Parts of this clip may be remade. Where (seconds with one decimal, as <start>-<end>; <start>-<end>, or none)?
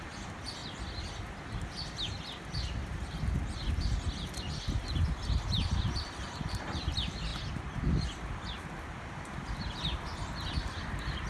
0.0-0.6; 5.8-10.1; 10.6-11.3